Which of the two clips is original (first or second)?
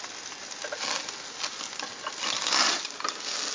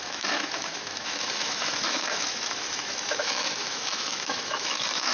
first